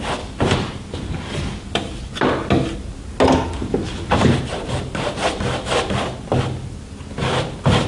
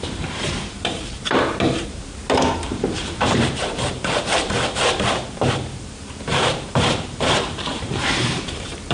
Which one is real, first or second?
first